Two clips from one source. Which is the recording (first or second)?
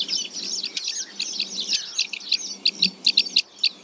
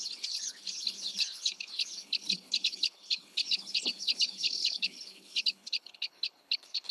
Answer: first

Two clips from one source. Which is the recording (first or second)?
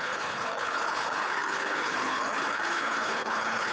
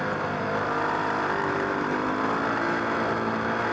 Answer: second